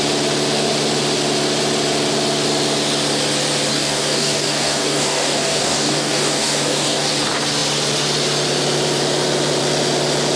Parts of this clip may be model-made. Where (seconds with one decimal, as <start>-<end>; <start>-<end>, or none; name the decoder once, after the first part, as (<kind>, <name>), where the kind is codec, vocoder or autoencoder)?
3.7-7.1 (codec, DAC)